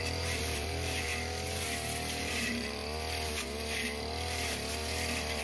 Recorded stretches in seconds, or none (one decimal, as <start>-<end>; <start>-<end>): 1.1-2.2; 2.8-5.4

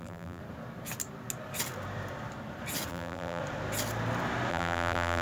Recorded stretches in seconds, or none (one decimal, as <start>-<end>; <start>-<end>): 0.4-2.9; 3.4-4.5

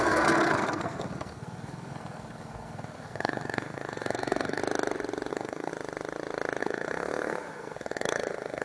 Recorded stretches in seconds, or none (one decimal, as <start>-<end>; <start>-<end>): 4.6-5.3; 5.7-6.6

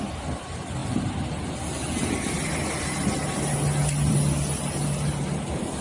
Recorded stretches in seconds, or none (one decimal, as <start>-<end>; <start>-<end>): 0.0-5.8

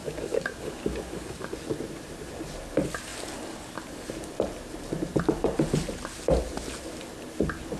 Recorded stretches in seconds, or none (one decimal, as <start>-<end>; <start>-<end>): 1.5-7.8

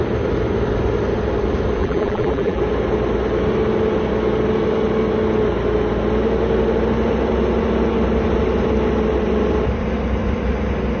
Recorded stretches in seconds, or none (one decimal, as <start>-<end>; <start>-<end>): 0.0-1.8; 2.6-11.0

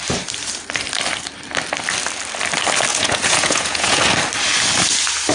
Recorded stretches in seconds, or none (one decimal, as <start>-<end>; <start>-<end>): 0.0-2.9; 4.0-5.3

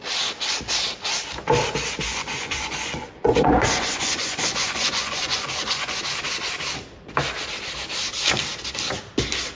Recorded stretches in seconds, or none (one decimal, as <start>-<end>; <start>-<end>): 0.0-2.1; 6.0-9.5